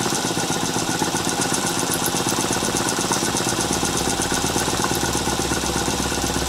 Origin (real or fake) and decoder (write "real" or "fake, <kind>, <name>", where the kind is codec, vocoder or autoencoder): fake, vocoder, BigVGAN v2